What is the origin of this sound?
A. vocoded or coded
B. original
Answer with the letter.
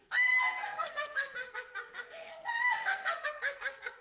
A